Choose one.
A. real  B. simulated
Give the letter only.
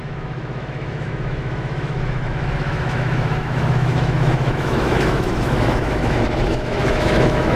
B